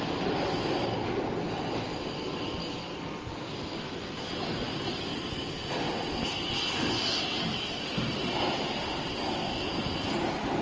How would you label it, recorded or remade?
recorded